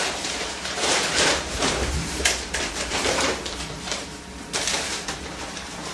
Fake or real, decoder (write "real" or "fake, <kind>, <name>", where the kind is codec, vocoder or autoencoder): fake, vocoder, BigVGAN v2